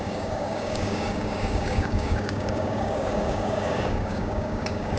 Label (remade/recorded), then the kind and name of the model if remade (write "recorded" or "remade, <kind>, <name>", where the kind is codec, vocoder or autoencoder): remade, codec, DAC